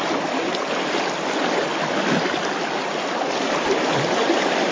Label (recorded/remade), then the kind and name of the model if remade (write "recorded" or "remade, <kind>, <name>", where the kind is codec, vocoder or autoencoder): recorded